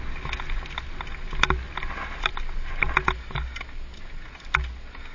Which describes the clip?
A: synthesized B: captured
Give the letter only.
B